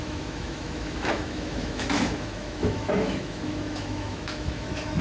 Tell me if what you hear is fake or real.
fake